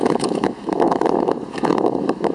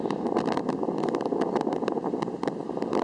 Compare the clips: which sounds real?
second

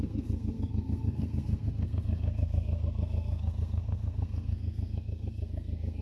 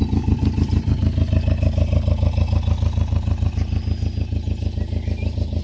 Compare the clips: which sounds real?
second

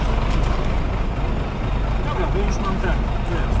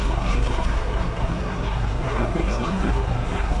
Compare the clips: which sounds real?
first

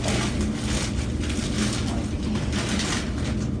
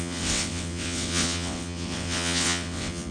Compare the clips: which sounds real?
first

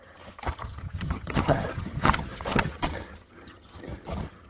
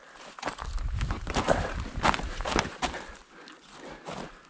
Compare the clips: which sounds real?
second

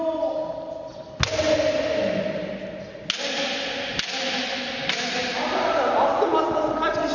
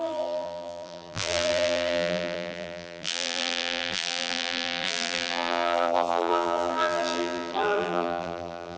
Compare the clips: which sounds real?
first